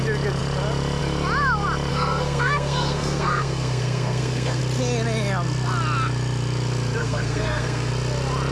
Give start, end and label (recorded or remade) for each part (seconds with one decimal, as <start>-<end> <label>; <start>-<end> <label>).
0.0-1.9 recorded; 1.9-4.6 remade; 4.6-7.0 recorded; 7.0-7.9 remade; 7.9-8.5 recorded